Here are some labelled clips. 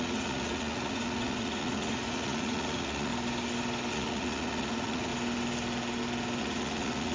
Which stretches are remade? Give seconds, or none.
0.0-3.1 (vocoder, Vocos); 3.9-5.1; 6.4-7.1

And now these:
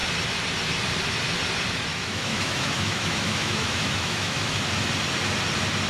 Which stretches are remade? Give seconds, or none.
1.9-4.6 (autoencoder, DAC-VAE)

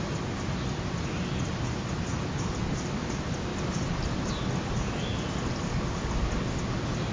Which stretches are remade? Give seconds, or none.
none

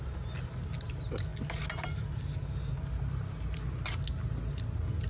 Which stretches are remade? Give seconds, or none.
none

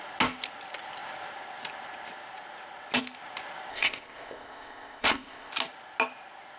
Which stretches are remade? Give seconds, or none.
3.7-5.5 (codec, ZipCodec)